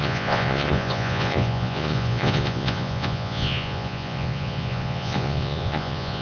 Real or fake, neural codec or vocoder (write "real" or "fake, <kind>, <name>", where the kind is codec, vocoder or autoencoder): fake, vocoder, Vocos